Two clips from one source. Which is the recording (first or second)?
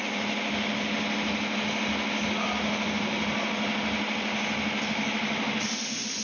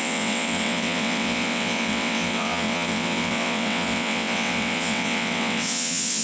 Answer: first